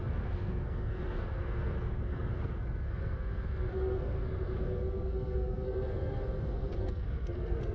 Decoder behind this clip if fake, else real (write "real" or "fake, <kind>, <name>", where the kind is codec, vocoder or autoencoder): fake, codec, SNAC